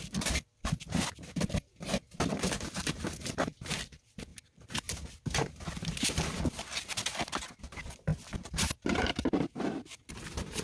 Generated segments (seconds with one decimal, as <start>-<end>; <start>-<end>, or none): 0.0-4.3; 5.2-10.6